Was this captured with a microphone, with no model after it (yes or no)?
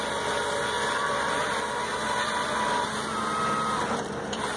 yes